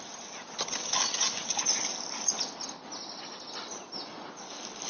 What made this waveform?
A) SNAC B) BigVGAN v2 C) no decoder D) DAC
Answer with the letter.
C